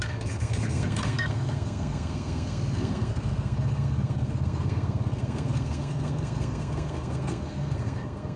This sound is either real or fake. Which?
fake